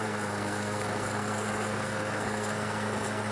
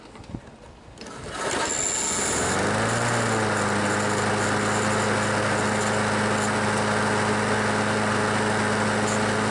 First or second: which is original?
second